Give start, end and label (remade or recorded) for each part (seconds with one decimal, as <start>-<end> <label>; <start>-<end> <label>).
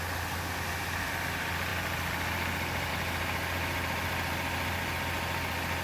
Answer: 0.0-5.8 recorded